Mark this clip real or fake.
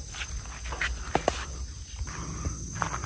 real